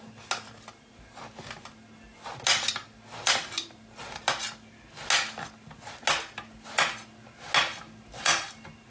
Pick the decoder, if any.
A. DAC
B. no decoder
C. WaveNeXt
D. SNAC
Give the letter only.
B